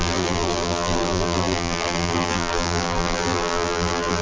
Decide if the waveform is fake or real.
fake